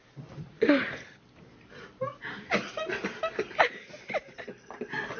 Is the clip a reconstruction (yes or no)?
no